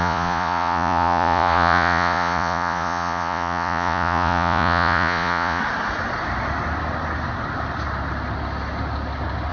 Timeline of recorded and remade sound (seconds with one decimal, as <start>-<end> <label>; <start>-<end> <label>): 0.0-5.6 remade; 5.6-9.5 recorded